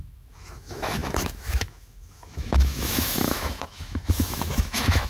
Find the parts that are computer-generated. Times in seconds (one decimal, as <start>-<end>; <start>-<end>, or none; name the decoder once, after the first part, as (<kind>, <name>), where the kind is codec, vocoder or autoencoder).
0.0-5.1 (autoencoder, DAC-VAE)